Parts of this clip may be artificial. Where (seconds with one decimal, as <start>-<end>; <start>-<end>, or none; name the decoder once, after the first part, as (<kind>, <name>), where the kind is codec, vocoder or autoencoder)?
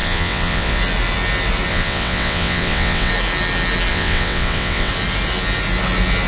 0.0-0.8 (vocoder, WaveNeXt); 1.7-3.1; 3.9-4.9